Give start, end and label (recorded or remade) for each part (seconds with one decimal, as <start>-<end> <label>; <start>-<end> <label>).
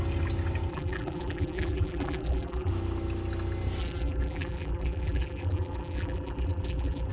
0.0-0.7 recorded; 0.7-2.7 remade; 2.7-3.8 recorded; 3.8-7.1 remade